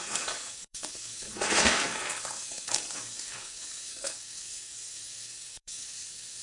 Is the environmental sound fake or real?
fake